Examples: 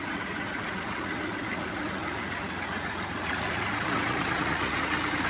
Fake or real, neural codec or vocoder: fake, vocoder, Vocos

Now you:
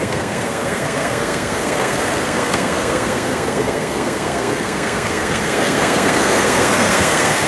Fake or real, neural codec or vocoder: fake, codec, SNAC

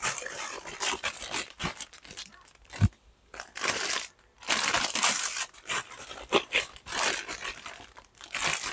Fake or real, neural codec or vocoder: fake, vocoder, BigVGAN v2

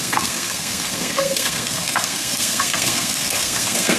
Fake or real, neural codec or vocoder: fake, codec, SNAC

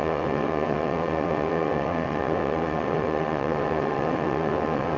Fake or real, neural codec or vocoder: fake, vocoder, WaveNeXt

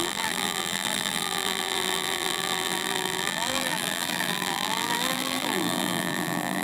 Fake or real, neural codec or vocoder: fake, vocoder, BigVGAN v2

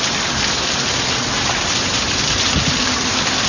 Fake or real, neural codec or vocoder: real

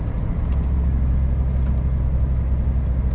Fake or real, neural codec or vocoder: real